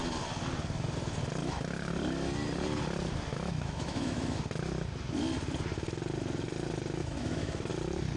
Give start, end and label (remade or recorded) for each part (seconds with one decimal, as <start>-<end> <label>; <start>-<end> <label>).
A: 0.0-1.4 recorded; 1.4-1.9 remade; 1.9-3.3 recorded; 3.3-4.4 remade; 4.4-7.0 recorded; 7.0-7.7 remade; 7.7-8.2 recorded